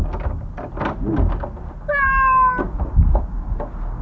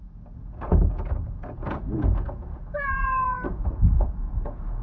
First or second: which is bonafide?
first